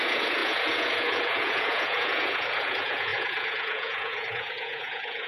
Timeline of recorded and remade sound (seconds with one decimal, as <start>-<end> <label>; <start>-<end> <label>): 0.0-5.3 remade